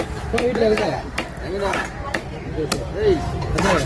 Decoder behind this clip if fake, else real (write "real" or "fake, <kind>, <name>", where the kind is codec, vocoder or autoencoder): real